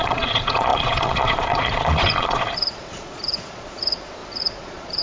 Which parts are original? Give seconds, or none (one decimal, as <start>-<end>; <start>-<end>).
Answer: none